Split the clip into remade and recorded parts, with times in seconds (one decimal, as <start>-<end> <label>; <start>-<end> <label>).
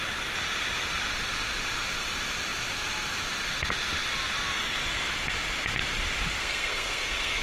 0.0-6.4 recorded; 6.4-7.4 remade